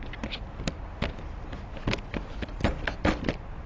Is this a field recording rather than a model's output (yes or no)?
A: yes